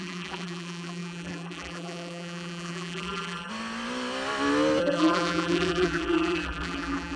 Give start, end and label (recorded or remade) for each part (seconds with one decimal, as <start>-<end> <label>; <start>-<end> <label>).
0.0-3.5 remade; 3.5-4.8 recorded; 4.8-7.2 remade

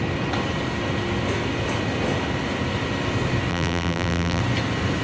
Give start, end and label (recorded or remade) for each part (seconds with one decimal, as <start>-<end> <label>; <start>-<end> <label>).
0.0-3.5 recorded; 3.5-4.4 remade; 4.4-5.0 recorded

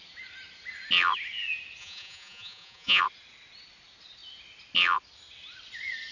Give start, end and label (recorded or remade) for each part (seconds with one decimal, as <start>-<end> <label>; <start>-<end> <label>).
0.0-1.8 recorded; 1.8-3.0 remade; 3.0-6.1 recorded

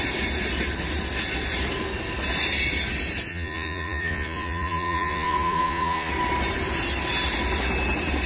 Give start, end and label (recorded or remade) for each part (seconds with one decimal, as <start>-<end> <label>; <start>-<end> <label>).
0.0-3.3 recorded; 3.3-6.1 remade; 6.1-8.3 recorded

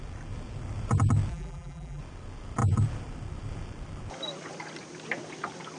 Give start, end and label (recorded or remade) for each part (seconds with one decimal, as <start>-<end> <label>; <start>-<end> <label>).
0.0-1.3 recorded; 1.3-2.0 remade; 2.0-5.8 recorded

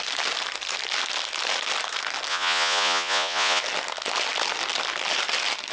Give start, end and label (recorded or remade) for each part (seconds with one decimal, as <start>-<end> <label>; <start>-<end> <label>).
0.0-2.3 recorded; 2.3-3.6 remade; 3.6-5.7 recorded

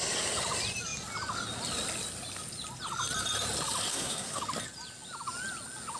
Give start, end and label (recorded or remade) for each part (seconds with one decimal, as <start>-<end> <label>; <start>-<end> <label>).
0.0-3.9 recorded; 3.9-4.4 remade; 4.4-6.0 recorded

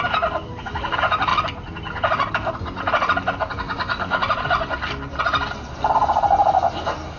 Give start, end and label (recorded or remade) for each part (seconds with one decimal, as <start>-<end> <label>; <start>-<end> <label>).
0.0-1.3 recorded; 1.3-5.2 remade; 5.2-7.2 recorded